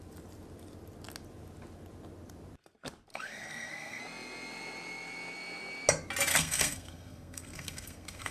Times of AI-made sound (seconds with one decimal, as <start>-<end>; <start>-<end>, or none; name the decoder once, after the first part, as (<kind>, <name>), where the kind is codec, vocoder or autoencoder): 3.1-4.0 (codec, SNAC); 6.3-8.3